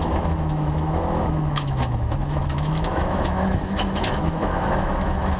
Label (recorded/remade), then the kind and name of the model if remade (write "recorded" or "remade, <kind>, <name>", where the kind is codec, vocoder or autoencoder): remade, autoencoder, DAC-VAE